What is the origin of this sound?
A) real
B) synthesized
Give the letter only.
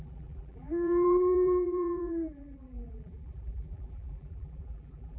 B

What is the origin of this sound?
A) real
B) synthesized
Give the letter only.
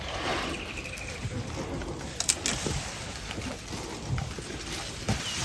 A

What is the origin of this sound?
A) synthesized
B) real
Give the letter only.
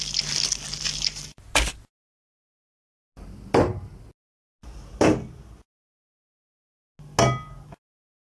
B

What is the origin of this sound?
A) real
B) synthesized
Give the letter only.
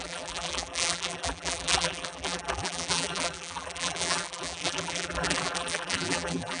B